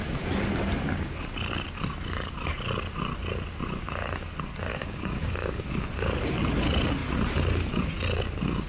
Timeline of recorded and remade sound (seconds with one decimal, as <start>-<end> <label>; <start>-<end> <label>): 0.0-4.7 recorded; 4.7-5.9 remade; 5.9-8.7 recorded